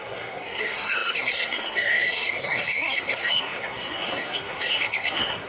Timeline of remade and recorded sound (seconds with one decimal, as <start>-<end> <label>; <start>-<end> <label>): 0.0-5.5 remade